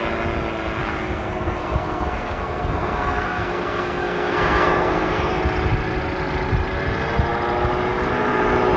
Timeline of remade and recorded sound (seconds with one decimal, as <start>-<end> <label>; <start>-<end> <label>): 0.0-0.8 recorded; 0.8-5.4 remade; 5.4-8.8 recorded